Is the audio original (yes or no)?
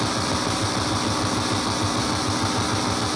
yes